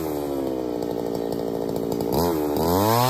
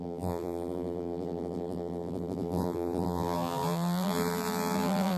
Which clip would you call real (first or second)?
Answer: first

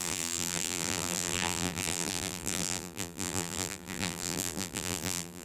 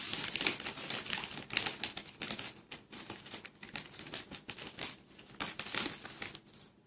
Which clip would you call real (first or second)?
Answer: second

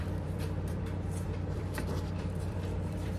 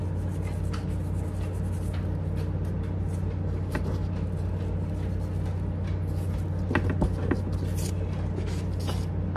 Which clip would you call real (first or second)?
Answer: second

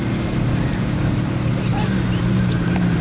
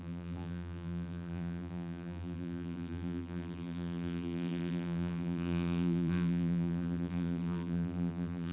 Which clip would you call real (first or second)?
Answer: first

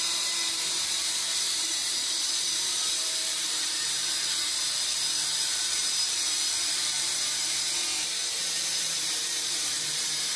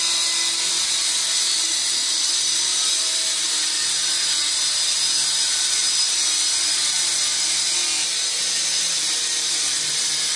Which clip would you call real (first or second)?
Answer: second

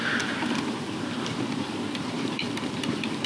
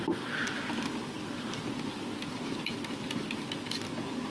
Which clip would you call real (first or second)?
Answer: second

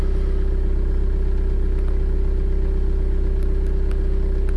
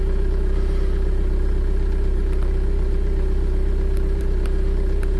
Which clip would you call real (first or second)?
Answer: first